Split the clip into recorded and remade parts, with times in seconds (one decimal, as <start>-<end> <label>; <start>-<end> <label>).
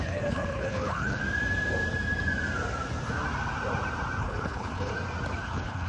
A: 0.0-1.2 remade; 1.2-4.2 recorded; 4.2-4.9 remade; 4.9-5.4 recorded; 5.4-5.9 remade